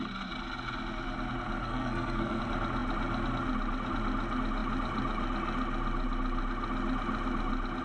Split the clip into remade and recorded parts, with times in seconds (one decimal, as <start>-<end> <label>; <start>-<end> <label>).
0.0-1.6 recorded; 1.6-2.4 remade; 2.4-7.8 recorded